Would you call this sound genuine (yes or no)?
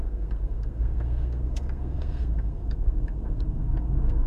no